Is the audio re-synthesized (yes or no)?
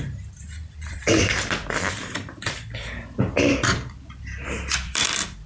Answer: yes